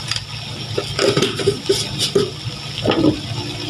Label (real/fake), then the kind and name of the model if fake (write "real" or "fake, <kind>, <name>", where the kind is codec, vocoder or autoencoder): real